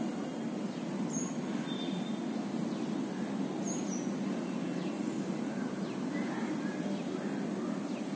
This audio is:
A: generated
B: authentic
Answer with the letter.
B